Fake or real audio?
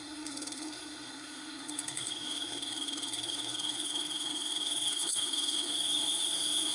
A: fake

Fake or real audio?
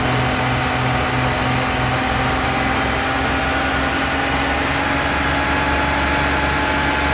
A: real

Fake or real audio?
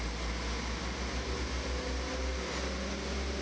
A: real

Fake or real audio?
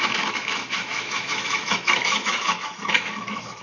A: fake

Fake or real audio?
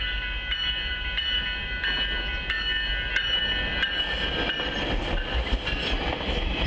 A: real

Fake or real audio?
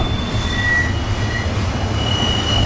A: real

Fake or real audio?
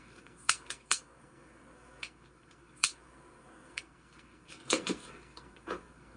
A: fake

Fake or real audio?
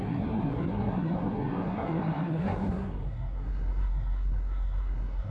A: fake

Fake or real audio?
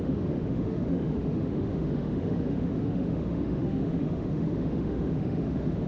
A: fake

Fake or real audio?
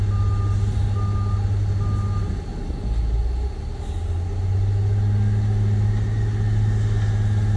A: real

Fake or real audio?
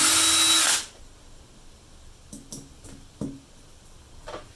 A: real